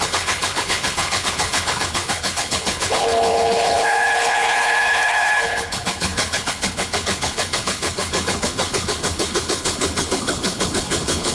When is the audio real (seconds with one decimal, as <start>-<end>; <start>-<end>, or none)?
none